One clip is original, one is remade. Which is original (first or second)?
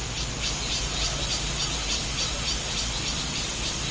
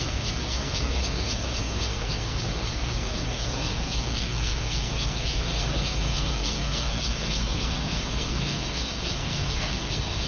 first